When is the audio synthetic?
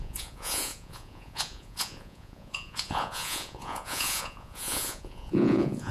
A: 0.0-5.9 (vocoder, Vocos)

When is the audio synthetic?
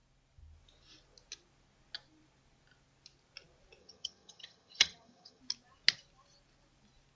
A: 3.8-5.4 (vocoder, HiFi-GAN)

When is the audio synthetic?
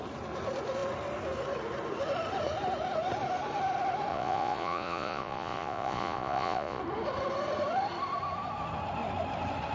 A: 4.1-6.8 (vocoder, Vocos)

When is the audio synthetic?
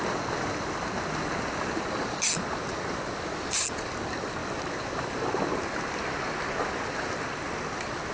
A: none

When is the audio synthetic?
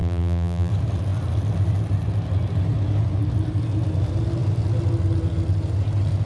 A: 0.0-0.7 (vocoder, BigVGAN v2)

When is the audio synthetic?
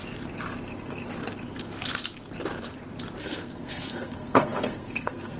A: 3.2-5.4 (codec, SNAC)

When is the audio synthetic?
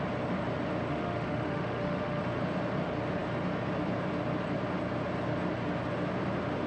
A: 0.9-2.2 (autoencoder, DAC-VAE)